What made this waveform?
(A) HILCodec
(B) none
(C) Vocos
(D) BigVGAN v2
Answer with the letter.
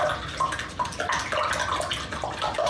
B